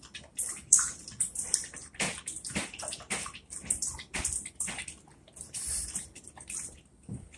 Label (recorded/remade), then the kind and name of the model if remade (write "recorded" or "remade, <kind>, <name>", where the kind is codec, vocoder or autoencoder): remade, vocoder, BigVGAN v2